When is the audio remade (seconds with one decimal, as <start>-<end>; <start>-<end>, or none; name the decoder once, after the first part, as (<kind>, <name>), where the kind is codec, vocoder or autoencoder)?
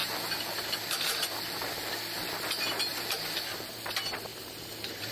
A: 0.0-2.5 (vocoder, BigVGAN v2); 2.9-3.8; 4.3-5.1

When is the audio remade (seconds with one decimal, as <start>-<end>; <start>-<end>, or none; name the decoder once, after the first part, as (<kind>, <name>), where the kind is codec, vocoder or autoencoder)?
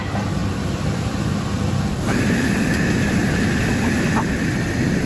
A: 0.0-3.2 (vocoder, BigVGAN v2); 4.5-5.1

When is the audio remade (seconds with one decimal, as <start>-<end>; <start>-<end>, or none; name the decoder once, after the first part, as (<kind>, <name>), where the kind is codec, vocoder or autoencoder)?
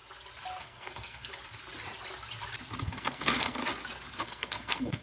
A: 0.6-1.3 (codec, SNAC); 2.8-3.6; 4.2-5.0